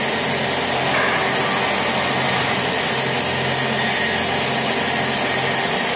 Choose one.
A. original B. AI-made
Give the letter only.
A